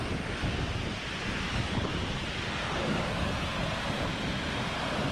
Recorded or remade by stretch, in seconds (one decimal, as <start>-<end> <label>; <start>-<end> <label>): 0.0-0.4 remade; 0.4-1.5 recorded; 1.5-1.9 remade; 1.9-2.5 recorded; 2.5-3.5 remade; 3.5-5.1 recorded

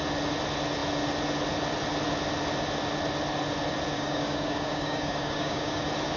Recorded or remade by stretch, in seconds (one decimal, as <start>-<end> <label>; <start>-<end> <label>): 0.0-3.9 recorded; 3.9-5.8 remade; 5.8-6.2 recorded